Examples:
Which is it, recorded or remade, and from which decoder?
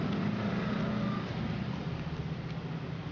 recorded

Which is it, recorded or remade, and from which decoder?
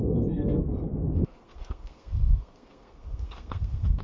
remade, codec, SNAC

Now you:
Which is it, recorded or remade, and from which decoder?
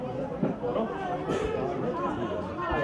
recorded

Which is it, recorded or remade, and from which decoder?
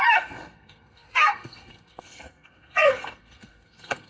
remade, codec, SNAC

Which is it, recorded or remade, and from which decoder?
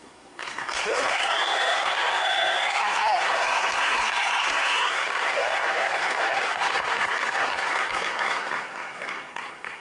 remade, codec, SNAC